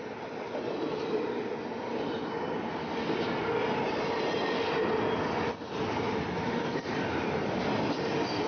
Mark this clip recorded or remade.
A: recorded